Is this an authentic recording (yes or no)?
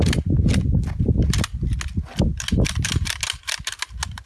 yes